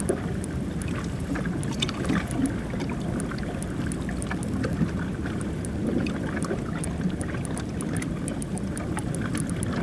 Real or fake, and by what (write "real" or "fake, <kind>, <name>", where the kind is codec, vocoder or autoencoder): real